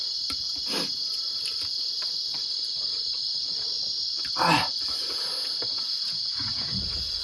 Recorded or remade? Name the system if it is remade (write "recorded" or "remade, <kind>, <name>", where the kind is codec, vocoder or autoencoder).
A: recorded